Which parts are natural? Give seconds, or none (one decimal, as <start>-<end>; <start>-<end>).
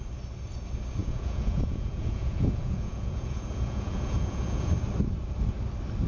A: 0.0-1.0; 4.7-6.1